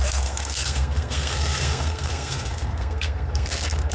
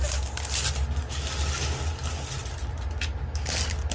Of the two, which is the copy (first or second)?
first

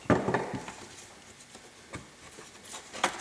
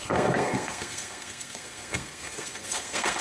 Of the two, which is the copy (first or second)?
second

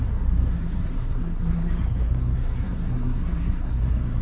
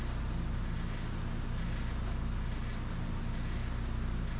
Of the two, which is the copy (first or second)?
first